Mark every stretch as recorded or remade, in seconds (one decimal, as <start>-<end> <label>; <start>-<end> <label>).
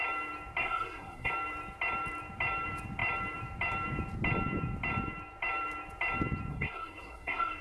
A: 0.0-0.6 recorded; 0.6-1.3 remade; 1.3-6.5 recorded; 6.5-7.6 remade